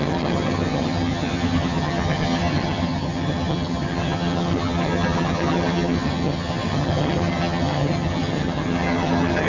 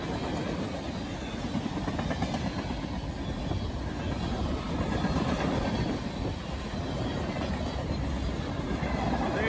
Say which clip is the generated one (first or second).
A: first